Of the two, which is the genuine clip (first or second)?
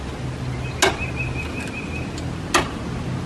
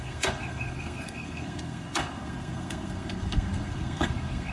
first